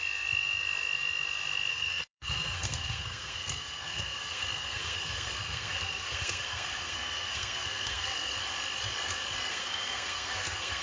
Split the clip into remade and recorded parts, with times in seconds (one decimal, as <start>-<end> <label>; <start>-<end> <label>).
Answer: 0.0-1.7 recorded; 1.7-8.4 remade; 8.4-9.5 recorded; 9.5-10.8 remade